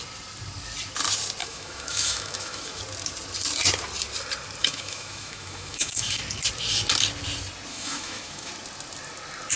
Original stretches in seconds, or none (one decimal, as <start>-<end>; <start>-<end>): 0.0-1.4; 2.8-4.6; 6.2-7.7; 8.5-9.6